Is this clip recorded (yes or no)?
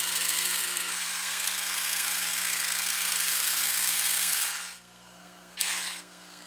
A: no